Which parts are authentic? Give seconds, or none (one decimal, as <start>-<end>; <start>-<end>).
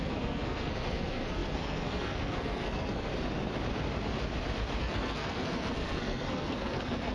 3.1-4.8